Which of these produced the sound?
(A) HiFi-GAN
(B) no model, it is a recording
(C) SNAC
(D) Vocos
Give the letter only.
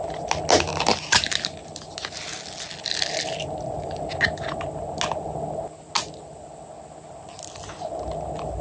B